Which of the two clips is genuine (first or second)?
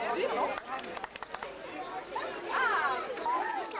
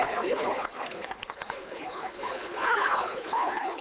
first